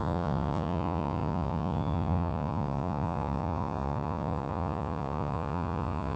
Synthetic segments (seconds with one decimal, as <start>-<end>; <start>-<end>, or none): 0.0-6.2